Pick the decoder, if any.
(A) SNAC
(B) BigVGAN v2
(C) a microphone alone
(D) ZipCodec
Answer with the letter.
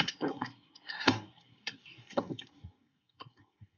A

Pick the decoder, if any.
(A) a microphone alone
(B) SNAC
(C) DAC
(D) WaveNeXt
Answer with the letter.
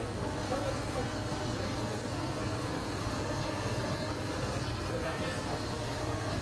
B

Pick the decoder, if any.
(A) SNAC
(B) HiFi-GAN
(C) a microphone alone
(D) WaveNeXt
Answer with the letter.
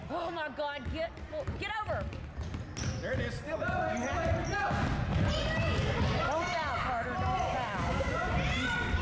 C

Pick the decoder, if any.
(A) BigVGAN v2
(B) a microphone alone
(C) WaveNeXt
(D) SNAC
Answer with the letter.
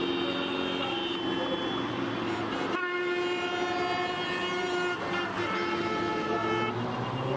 B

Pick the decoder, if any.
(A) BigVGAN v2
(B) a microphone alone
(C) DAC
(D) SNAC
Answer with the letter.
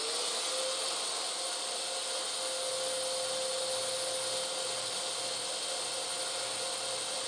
B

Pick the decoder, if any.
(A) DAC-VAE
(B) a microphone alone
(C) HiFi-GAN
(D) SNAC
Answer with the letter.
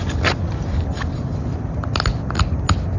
B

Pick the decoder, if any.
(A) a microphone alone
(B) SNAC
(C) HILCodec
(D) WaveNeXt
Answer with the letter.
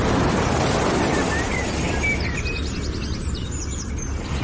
A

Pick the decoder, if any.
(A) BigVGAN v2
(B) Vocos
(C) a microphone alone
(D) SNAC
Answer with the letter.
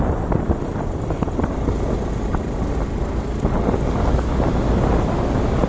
C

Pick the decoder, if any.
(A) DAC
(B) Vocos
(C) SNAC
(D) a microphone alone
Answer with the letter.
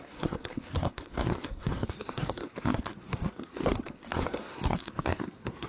C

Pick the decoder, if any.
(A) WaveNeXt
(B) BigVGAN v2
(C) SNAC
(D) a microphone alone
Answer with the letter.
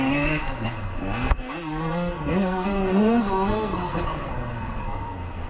C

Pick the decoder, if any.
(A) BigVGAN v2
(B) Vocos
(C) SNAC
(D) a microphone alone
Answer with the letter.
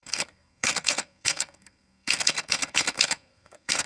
C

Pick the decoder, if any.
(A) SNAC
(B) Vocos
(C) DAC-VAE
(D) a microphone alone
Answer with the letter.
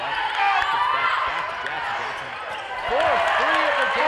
D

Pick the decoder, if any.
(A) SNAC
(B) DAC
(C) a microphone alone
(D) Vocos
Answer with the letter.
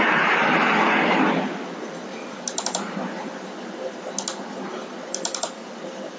C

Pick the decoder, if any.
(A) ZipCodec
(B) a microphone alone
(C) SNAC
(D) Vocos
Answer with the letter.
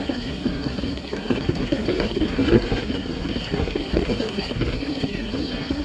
C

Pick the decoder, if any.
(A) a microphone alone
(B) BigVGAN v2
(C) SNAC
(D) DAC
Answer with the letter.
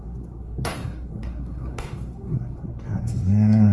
C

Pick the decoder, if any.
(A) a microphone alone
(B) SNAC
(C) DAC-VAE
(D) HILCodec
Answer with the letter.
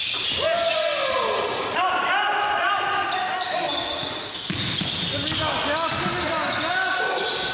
A